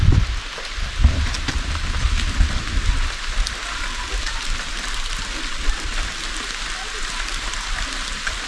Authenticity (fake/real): real